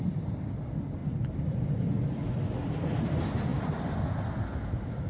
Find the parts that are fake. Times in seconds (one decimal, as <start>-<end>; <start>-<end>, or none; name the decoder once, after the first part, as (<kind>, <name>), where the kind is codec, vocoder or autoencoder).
none